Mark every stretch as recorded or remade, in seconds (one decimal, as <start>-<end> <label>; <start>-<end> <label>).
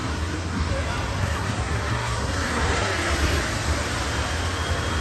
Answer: 0.0-0.7 remade; 0.7-1.2 recorded; 1.2-3.4 remade; 3.4-5.0 recorded